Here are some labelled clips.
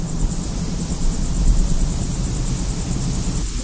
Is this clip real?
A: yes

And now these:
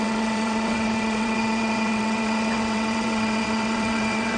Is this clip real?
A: no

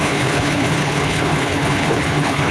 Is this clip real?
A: no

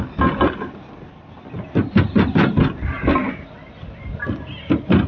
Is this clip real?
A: yes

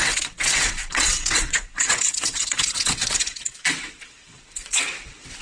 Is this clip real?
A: no